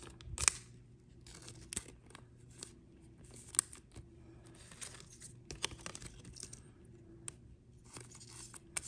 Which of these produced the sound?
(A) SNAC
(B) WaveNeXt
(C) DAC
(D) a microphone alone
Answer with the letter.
D